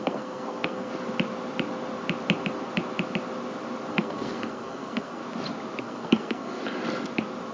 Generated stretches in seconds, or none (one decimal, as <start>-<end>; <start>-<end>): 0.0-0.9; 3.9-5.2; 5.8-6.6